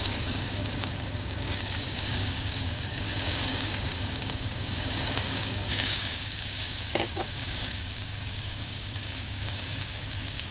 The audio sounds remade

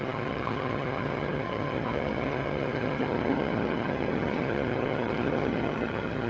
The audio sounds remade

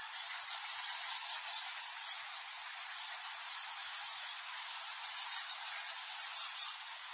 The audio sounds recorded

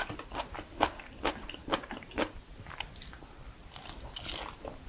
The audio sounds recorded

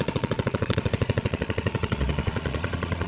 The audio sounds remade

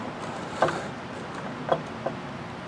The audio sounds recorded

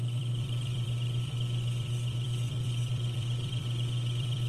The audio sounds remade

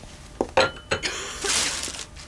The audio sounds recorded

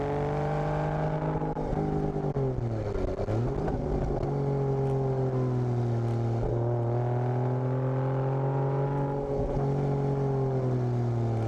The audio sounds recorded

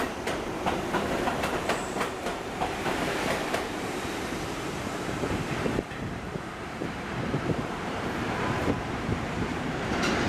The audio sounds remade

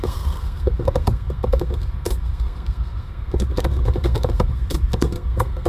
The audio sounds remade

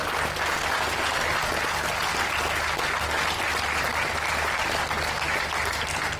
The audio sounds recorded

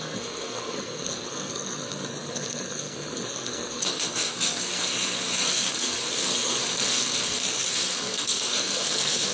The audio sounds remade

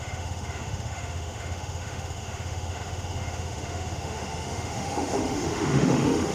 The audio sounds remade